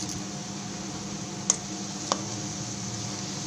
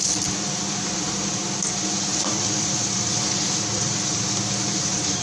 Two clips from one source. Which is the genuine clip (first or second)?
first